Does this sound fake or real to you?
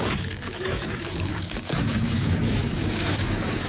fake